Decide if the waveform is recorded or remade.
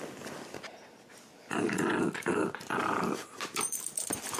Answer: recorded